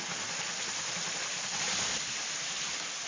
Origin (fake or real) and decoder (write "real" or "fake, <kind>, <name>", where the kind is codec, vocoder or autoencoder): real